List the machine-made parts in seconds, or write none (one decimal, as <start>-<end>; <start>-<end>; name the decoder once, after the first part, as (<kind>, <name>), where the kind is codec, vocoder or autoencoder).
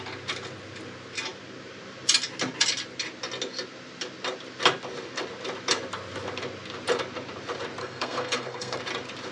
7.8-8.8 (codec, SNAC)